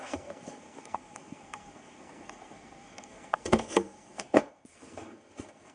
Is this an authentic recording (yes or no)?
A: no